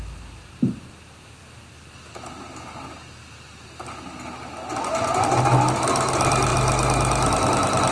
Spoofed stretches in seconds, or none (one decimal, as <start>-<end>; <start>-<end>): none